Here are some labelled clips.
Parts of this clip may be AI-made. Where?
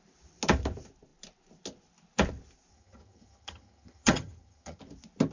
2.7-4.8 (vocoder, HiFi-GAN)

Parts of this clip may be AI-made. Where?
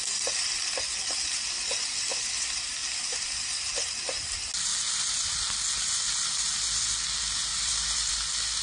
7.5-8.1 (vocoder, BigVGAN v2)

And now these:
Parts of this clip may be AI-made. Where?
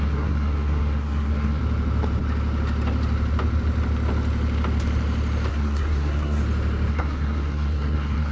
0.0-1.6 (codec, SNAC); 5.5-6.4; 6.9-8.3